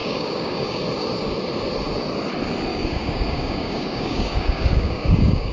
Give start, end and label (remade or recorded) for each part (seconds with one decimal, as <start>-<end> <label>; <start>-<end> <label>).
0.0-0.8 remade; 0.8-2.7 recorded; 2.7-5.5 remade